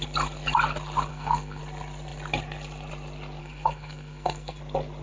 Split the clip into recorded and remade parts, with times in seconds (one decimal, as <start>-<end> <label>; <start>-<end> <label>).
0.0-1.1 recorded; 1.1-1.6 remade; 1.6-3.4 recorded; 3.4-4.6 remade; 4.6-5.0 recorded